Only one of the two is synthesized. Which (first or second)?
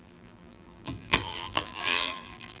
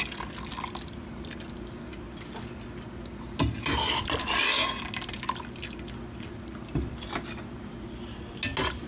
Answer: first